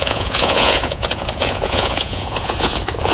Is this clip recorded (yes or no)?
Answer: no